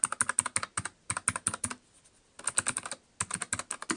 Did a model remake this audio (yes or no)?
no